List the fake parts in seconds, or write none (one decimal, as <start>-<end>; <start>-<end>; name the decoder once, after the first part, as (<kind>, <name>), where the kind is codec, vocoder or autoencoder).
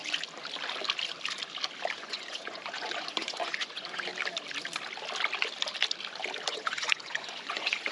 2.0-4.1 (vocoder, Vocos); 6.5-7.9